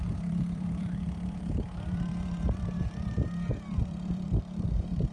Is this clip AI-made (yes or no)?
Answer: yes